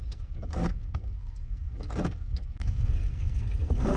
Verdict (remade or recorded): remade